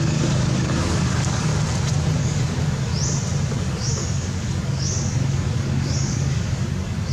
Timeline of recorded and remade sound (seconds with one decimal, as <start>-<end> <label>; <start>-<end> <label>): 0.0-1.5 remade; 1.5-2.2 recorded; 2.2-2.9 remade; 2.9-3.6 recorded; 3.6-7.1 remade

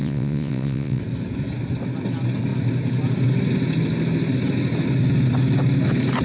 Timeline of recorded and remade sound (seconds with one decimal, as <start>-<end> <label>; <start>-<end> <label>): 0.0-1.0 remade; 1.0-6.2 recorded

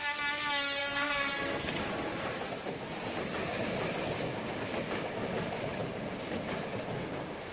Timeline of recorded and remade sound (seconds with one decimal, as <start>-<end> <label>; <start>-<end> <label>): 0.0-0.8 recorded; 0.8-1.7 remade; 1.7-7.5 recorded

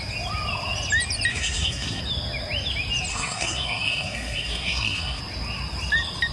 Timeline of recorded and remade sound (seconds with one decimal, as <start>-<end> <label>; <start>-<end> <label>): 0.0-1.3 recorded; 1.3-2.0 remade; 2.0-3.1 recorded; 3.1-5.2 remade; 5.2-6.3 recorded

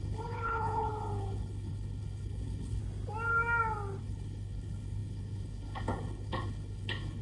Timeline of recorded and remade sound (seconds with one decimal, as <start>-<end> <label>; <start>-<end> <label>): 0.0-2.8 remade; 2.8-4.0 recorded; 4.0-7.2 remade

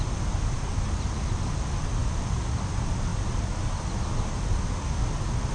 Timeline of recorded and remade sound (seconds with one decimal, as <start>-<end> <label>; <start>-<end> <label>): 0.0-5.5 recorded

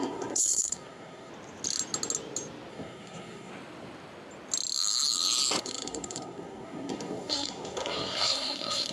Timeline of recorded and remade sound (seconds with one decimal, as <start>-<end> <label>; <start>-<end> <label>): 0.0-1.3 remade; 1.3-2.7 recorded; 2.7-3.5 remade; 3.5-5.6 recorded; 5.6-8.9 remade